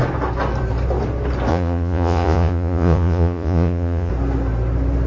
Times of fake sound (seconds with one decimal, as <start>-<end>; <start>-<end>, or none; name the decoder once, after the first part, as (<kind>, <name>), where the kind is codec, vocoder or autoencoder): 1.5-4.1 (vocoder, Vocos)